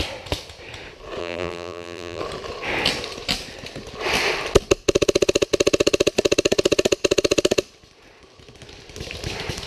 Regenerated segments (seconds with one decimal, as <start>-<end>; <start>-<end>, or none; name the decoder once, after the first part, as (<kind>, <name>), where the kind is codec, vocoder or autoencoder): 1.2-2.2 (vocoder, BigVGAN v2)